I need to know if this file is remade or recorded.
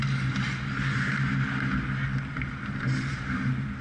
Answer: recorded